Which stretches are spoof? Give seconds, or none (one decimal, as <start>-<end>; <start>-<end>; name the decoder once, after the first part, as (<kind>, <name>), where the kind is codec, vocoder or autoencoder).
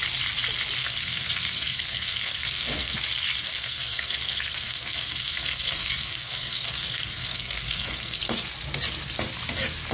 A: 0.8-3.0 (codec, SNAC); 3.4-8.2